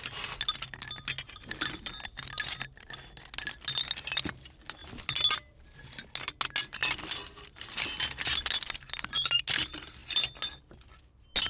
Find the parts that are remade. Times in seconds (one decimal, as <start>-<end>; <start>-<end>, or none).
none